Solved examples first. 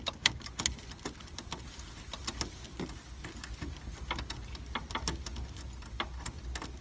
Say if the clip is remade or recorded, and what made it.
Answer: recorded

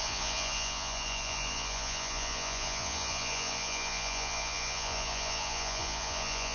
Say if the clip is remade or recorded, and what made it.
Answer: remade, vocoder, Vocos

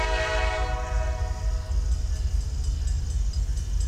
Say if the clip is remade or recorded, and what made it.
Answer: recorded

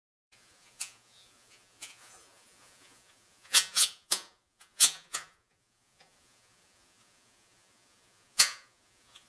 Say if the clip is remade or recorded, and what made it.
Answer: remade, vocoder, Vocos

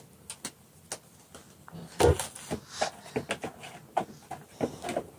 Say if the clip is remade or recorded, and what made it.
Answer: recorded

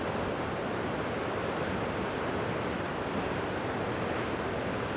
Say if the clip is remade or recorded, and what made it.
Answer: recorded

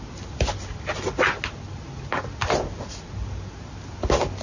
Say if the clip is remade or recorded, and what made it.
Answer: recorded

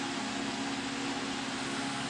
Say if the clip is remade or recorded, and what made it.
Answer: recorded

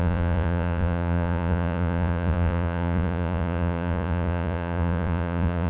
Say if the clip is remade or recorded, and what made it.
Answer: remade, vocoder, Vocos